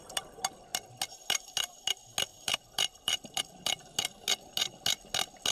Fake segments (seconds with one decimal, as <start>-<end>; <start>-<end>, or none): 2.3-3.4